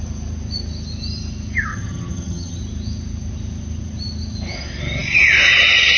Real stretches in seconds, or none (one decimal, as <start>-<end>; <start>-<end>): 0.0-1.7; 2.6-6.0